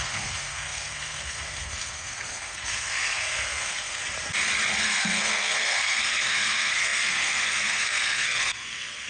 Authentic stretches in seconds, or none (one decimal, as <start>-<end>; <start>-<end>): 4.0-4.8